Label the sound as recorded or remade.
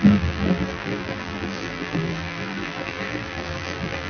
remade